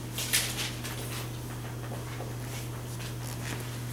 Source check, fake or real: real